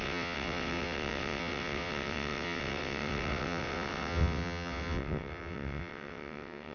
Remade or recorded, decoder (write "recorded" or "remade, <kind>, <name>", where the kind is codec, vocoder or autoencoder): remade, vocoder, WaveNeXt